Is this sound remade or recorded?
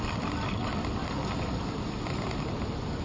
recorded